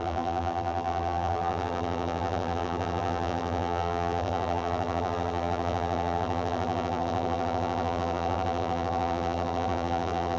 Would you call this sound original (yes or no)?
no